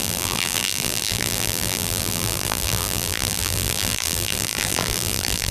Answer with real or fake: fake